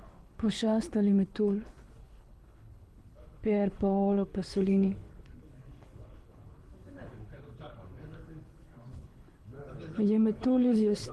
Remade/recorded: remade